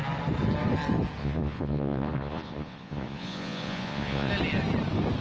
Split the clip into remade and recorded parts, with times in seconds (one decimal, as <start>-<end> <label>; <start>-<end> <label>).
0.0-1.2 recorded; 1.2-4.3 remade; 4.3-5.2 recorded